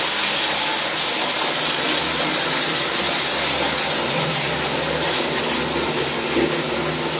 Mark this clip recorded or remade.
recorded